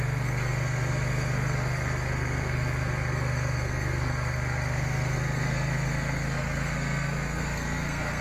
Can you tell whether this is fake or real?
fake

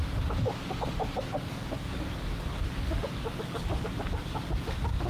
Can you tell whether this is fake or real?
fake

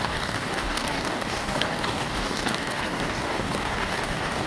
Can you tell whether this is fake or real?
fake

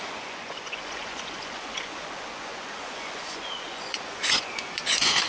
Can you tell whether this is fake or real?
fake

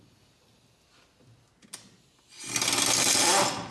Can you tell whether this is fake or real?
real